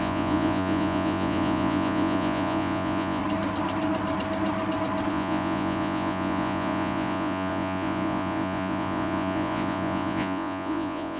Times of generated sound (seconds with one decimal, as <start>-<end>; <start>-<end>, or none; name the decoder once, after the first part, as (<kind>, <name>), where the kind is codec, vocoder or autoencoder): 0.0-3.2 (vocoder, Vocos); 5.1-11.2